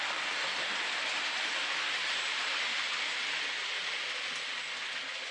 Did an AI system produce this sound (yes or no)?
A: no